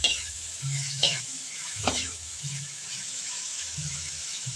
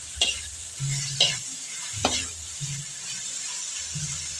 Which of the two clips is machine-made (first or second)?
first